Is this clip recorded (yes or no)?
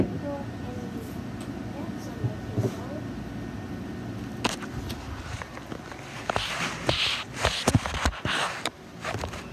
yes